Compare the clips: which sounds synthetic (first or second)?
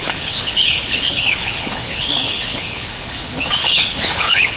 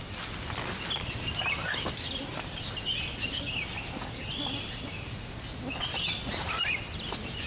first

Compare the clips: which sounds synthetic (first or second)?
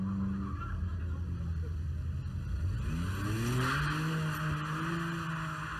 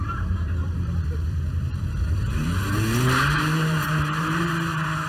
second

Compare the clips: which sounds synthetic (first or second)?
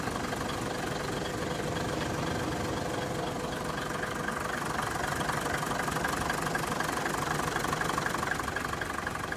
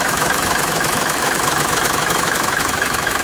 second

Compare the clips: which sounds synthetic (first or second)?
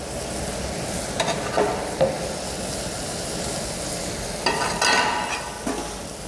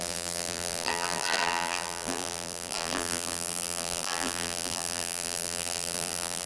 second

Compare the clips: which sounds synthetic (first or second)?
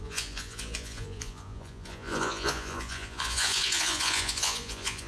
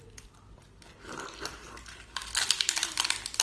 first